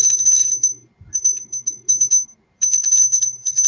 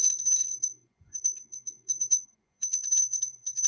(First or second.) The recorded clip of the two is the first